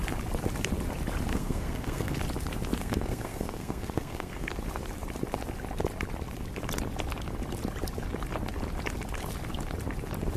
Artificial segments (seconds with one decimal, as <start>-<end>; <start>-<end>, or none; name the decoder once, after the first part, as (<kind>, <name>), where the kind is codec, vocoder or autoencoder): 1.3-2.2 (codec, SNAC); 2.8-4.5